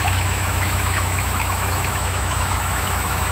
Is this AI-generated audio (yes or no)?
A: yes